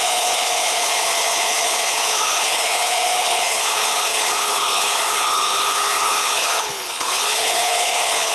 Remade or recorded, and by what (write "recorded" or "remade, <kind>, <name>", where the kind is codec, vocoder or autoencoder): remade, codec, HILCodec